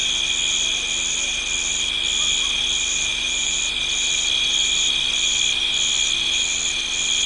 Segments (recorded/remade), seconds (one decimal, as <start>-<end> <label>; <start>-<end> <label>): 0.0-3.1 recorded; 3.1-3.6 remade; 3.6-7.3 recorded